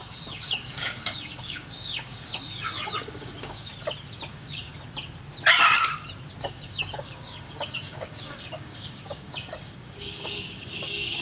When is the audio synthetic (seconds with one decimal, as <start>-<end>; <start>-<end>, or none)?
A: 0.0-3.7; 4.3-4.7; 6.4-11.2